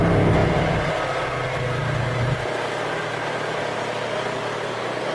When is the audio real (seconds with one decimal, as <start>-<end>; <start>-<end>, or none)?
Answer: 0.0-1.8; 2.5-3.0; 3.6-5.1